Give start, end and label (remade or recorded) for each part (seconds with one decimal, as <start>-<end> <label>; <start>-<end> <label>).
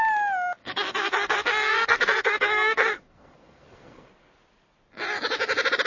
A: 0.0-0.6 recorded; 0.6-4.1 remade; 4.1-5.9 recorded